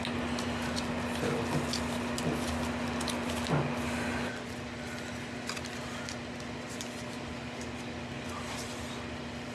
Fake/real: real